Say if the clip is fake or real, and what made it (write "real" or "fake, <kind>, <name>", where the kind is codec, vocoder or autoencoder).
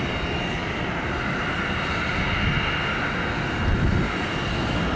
real